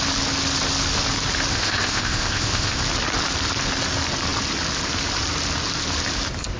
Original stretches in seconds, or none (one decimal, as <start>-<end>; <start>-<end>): 0.0-1.5; 2.8-6.6